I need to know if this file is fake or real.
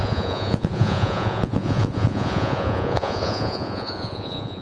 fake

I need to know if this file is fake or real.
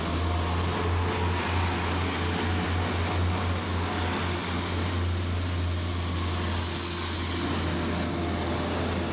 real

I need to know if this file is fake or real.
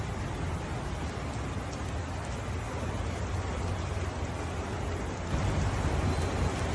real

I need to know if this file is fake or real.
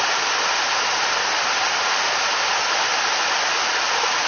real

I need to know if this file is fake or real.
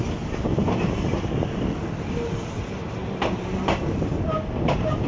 real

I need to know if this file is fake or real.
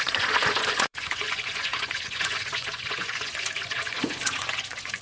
fake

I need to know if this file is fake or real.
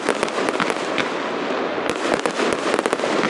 real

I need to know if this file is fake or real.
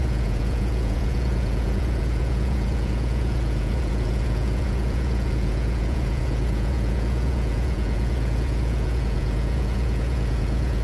fake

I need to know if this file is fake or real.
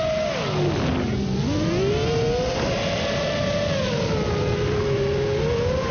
real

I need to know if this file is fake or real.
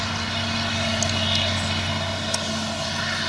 real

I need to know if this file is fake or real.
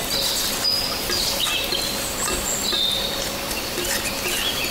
real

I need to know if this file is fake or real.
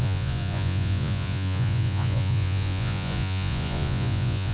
fake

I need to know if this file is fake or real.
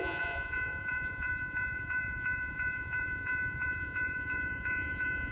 fake